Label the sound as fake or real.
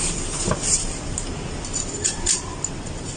real